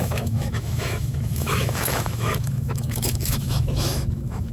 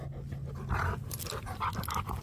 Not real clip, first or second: first